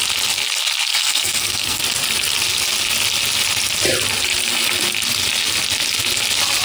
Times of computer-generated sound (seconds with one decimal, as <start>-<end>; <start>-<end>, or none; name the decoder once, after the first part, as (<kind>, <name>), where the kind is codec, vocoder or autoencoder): 0.9-1.8 (codec, SNAC)